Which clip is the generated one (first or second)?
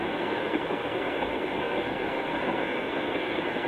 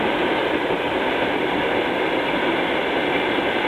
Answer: first